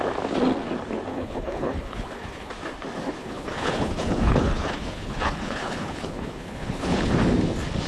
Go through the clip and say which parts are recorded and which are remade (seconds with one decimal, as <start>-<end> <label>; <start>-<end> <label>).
0.0-1.1 recorded; 1.1-2.5 remade; 2.5-3.2 recorded; 3.2-7.1 remade; 7.1-7.9 recorded